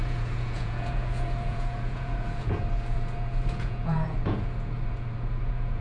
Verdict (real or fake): fake